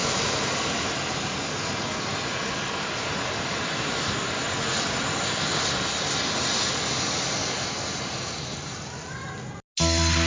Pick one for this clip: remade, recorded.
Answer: recorded